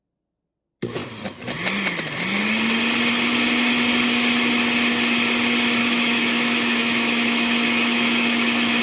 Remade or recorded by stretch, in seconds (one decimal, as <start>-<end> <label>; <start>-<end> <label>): 0.0-5.8 recorded; 5.8-8.8 remade